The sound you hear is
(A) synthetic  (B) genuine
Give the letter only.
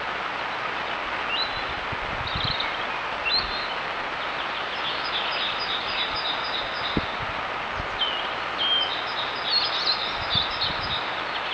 B